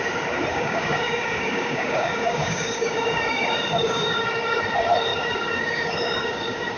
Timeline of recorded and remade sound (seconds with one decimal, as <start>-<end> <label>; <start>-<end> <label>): 0.0-0.5 recorded; 0.5-4.6 remade; 4.6-5.1 recorded; 5.1-6.8 remade